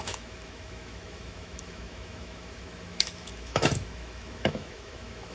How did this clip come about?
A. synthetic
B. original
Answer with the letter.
A